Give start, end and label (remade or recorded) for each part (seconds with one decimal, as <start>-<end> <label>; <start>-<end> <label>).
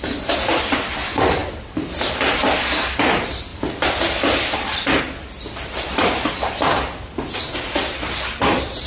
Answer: 0.0-8.9 recorded